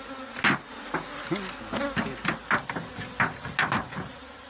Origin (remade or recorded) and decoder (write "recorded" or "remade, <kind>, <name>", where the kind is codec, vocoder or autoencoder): recorded